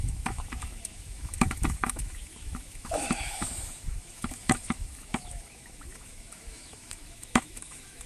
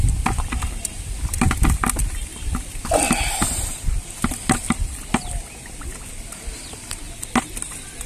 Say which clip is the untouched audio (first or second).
second